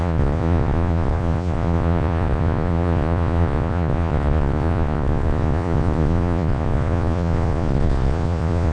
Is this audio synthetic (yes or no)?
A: yes